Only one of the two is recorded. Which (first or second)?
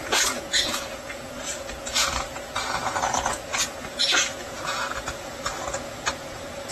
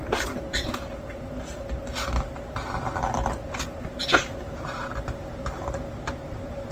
second